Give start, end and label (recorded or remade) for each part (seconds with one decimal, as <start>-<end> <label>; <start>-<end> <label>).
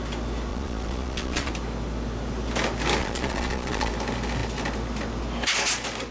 0.0-0.5 recorded; 0.5-1.5 remade; 1.5-3.0 recorded; 3.0-3.9 remade; 3.9-6.1 recorded